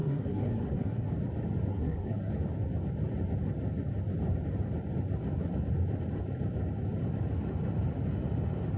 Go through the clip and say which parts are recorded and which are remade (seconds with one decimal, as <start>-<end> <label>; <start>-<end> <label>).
0.0-1.1 remade; 1.1-1.7 recorded; 1.7-2.3 remade; 2.3-8.8 recorded